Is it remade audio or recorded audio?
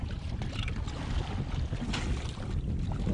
recorded